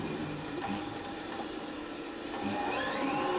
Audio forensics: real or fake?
fake